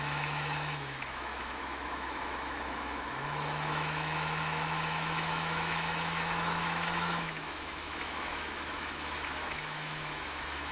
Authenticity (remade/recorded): remade